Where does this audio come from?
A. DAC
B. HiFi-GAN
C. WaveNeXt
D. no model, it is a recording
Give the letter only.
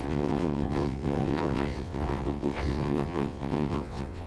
C